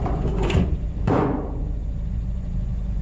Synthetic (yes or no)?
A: yes